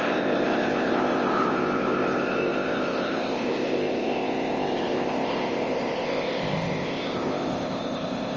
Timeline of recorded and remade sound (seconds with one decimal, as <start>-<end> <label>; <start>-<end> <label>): 0.0-8.4 remade